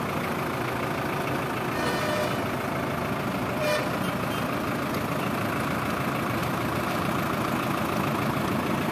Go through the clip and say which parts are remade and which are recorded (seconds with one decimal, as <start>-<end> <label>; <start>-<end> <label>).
0.0-6.4 recorded; 6.4-7.1 remade; 7.1-8.9 recorded